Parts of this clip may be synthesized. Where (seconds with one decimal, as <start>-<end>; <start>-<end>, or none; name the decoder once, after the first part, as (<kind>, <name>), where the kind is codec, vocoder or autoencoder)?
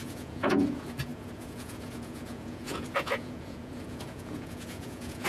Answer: 0.0-5.3 (vocoder, Vocos)